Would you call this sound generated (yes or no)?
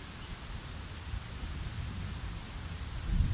no